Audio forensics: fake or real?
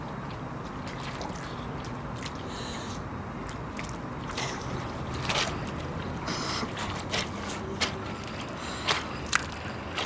real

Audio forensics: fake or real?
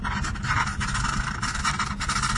real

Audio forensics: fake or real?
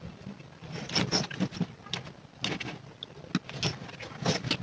real